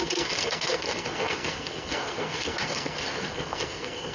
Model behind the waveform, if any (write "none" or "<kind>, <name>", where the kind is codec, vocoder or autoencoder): codec, SNAC